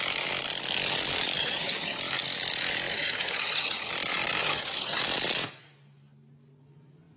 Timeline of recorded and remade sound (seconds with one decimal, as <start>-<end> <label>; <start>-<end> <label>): 0.0-1.4 recorded; 1.4-2.0 remade; 2.0-2.9 recorded; 2.9-3.9 remade; 3.9-4.4 recorded; 4.4-5.0 remade; 5.0-7.2 recorded